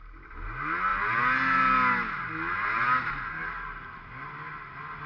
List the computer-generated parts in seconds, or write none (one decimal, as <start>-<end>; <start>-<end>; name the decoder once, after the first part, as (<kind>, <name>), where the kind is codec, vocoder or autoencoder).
none

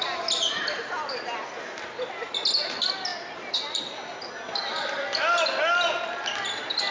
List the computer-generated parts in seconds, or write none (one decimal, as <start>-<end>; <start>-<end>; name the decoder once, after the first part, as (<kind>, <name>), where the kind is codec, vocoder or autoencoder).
none